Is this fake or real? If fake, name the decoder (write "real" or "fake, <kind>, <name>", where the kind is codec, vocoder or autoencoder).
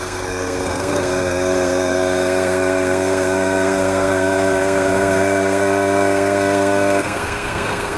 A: fake, codec, SNAC